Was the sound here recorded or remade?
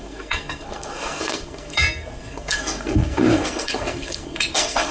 remade